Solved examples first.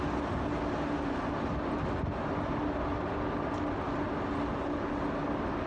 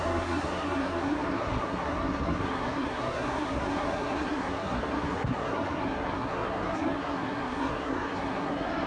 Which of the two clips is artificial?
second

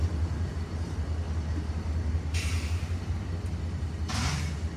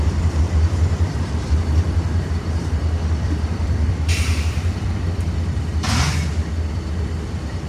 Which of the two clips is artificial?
second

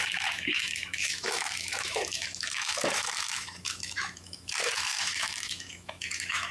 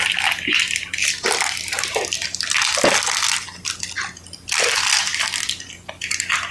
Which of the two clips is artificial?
first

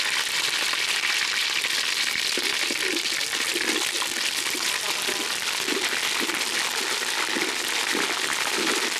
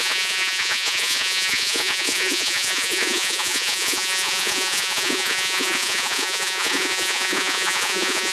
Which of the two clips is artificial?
second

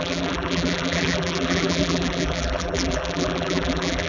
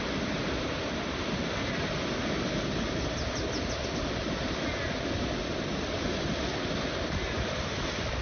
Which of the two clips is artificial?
first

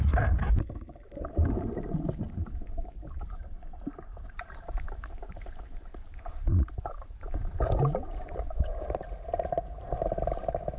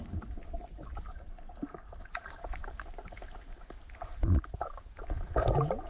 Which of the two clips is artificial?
first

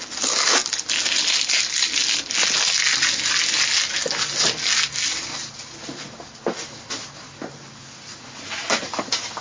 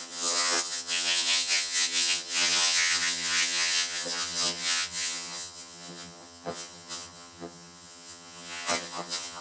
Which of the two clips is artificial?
second